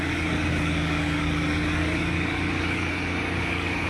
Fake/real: fake